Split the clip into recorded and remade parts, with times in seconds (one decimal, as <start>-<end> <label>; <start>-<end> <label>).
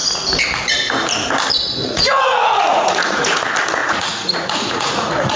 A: 0.0-1.8 recorded; 1.8-3.4 remade; 3.4-3.8 recorded; 3.8-5.4 remade